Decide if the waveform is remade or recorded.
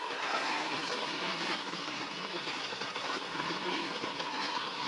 remade